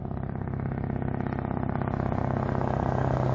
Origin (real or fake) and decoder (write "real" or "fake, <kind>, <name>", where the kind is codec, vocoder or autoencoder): real